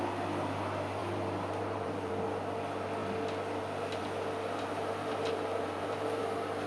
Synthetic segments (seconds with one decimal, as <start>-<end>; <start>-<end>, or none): 1.0-2.1; 5.0-6.2